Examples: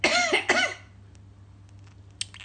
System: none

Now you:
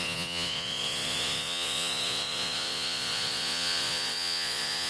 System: vocoder, Vocos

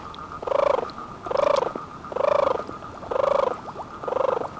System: none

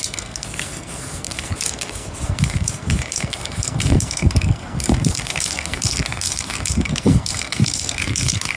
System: codec, SNAC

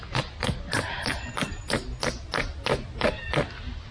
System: none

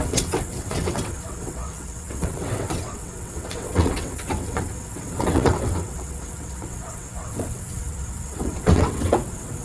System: vocoder, WaveNeXt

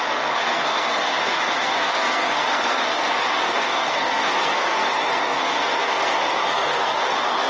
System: codec, SNAC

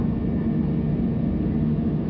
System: none